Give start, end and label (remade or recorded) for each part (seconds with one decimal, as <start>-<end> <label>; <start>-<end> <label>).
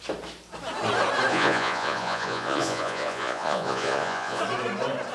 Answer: 0.0-1.3 recorded; 1.3-4.4 remade; 4.4-5.1 recorded